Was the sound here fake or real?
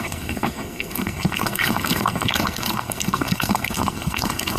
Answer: fake